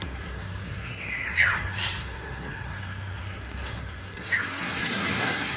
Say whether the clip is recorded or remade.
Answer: remade